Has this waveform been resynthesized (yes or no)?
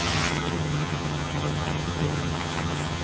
yes